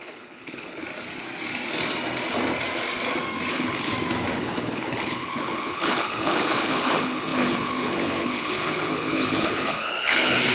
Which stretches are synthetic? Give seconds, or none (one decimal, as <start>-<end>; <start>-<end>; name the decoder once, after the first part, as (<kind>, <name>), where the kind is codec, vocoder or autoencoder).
0.0-0.8 (codec, HILCodec); 3.5-3.9; 4.4-10.5